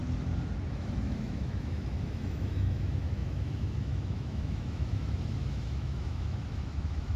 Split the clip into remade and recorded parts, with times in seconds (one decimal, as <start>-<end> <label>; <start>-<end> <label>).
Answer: 0.0-0.7 recorded; 0.7-7.2 remade